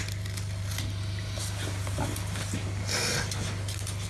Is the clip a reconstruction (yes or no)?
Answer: no